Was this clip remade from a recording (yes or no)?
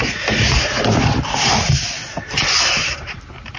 no